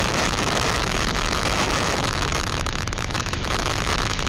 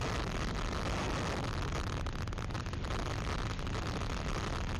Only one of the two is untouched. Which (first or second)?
second